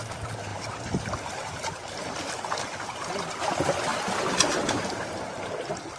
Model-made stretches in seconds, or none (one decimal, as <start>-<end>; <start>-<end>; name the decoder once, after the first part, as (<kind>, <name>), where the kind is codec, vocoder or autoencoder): 0.0-3.9 (vocoder, BigVGAN v2)